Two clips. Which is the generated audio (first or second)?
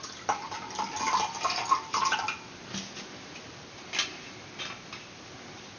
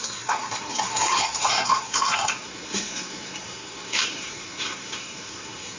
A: second